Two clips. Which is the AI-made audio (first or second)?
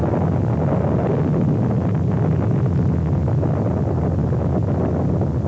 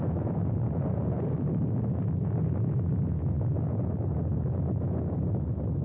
second